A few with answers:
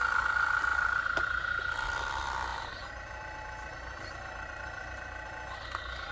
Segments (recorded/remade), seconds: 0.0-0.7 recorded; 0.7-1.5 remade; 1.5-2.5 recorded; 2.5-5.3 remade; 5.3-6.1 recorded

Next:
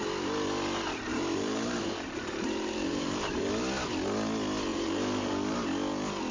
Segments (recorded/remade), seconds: 0.0-1.1 recorded; 1.1-3.5 remade; 3.5-4.7 recorded; 4.7-5.3 remade; 5.3-6.3 recorded

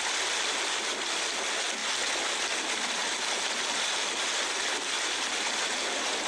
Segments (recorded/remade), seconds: 0.0-6.3 recorded

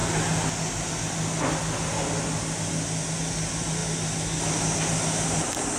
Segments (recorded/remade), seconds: 0.0-5.8 recorded

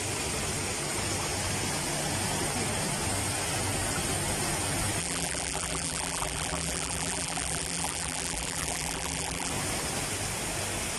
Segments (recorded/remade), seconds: 0.0-5.0 recorded; 5.0-9.5 remade; 9.5-11.0 recorded